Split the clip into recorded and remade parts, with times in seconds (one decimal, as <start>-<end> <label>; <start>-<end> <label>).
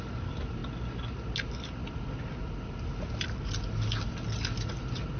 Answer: 0.0-5.2 recorded